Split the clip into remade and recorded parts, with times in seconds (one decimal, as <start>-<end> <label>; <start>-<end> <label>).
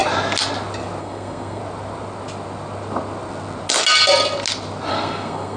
0.0-1.0 recorded; 1.0-1.6 remade; 1.6-4.9 recorded; 4.9-5.6 remade